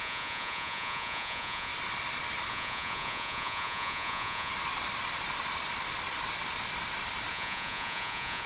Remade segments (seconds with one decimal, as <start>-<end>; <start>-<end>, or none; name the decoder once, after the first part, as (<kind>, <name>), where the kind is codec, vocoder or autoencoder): 0.0-1.7 (vocoder, Vocos); 2.5-4.5; 7.3-8.5